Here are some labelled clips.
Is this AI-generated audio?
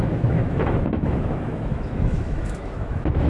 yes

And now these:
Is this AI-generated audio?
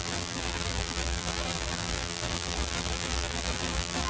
yes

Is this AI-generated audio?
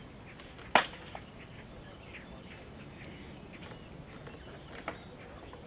no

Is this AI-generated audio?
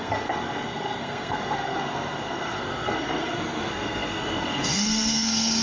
yes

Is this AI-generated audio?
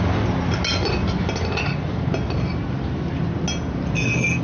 no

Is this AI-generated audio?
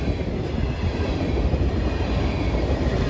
no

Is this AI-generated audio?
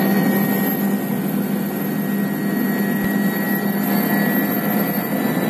no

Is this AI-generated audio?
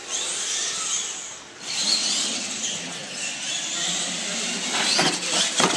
no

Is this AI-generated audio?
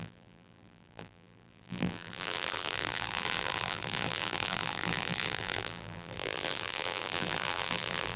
yes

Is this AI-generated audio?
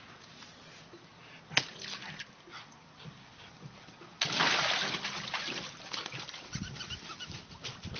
no